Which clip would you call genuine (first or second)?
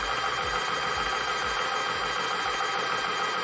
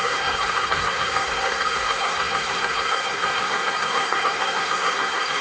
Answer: first